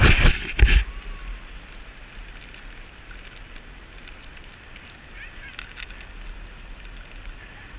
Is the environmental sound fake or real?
real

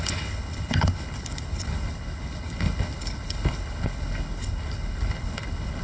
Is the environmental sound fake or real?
fake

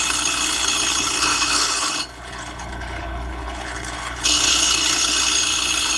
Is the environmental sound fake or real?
fake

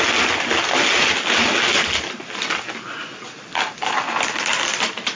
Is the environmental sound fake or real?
real